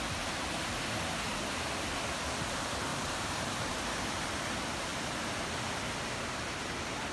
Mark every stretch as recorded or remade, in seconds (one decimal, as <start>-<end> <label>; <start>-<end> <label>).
0.0-2.9 recorded; 2.9-3.7 remade; 3.7-7.1 recorded

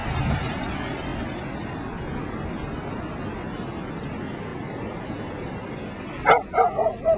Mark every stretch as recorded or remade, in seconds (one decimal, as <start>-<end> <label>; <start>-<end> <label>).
0.0-0.6 remade; 0.6-4.5 recorded; 4.5-5.7 remade; 5.7-7.2 recorded

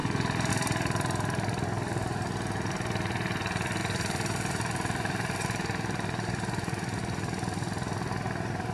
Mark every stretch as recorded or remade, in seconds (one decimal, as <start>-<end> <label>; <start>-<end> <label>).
0.0-3.8 recorded; 3.8-7.0 remade; 7.0-8.7 recorded

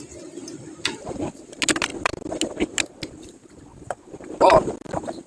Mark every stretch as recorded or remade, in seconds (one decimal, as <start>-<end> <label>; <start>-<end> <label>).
0.0-3.7 recorded; 3.7-4.6 remade; 4.6-5.3 recorded

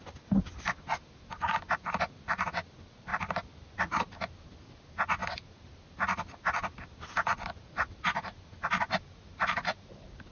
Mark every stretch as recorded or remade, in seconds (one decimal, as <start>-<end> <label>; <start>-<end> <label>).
0.0-3.1 recorded; 3.1-4.0 remade; 4.0-10.3 recorded